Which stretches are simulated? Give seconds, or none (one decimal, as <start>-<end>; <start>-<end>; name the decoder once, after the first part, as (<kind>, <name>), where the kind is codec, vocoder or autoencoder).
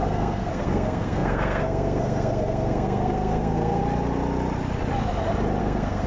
0.0-3.8 (codec, SNAC); 5.6-6.1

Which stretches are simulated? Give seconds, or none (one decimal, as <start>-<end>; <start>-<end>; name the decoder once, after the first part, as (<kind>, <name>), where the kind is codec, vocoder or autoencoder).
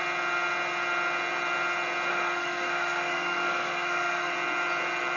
2.1-4.3 (codec, SNAC)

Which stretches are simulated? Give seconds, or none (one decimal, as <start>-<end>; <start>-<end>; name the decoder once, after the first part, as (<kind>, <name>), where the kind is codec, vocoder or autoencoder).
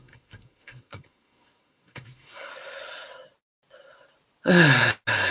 0.0-2.5 (codec, SNAC)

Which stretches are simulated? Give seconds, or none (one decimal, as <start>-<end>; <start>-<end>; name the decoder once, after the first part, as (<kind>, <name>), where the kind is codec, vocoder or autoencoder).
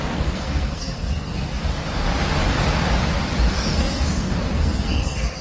0.0-1.0 (codec, SNAC); 3.5-5.4